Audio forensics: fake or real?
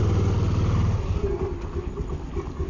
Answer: real